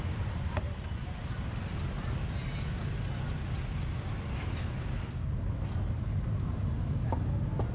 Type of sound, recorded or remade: recorded